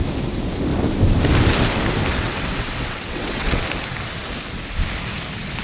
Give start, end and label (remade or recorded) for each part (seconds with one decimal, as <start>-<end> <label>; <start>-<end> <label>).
0.0-2.1 recorded; 2.1-3.6 remade; 3.6-5.6 recorded